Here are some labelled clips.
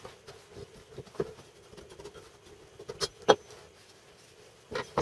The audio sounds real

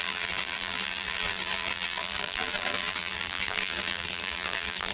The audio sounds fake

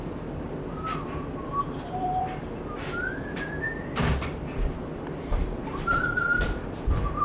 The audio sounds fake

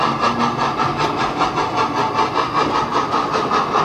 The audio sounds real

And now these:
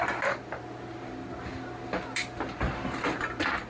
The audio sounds real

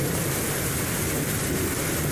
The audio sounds real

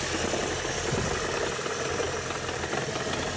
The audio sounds real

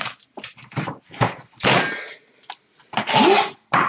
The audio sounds real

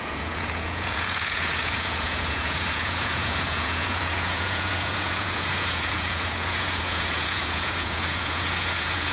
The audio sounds fake